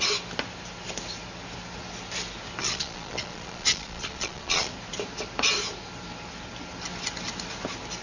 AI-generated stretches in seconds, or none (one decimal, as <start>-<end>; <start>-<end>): 2.6-4.7